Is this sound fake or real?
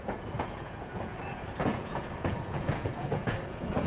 fake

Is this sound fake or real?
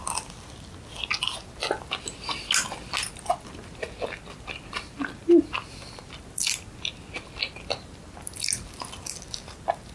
real